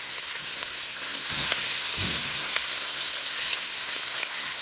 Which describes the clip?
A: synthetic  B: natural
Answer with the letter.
A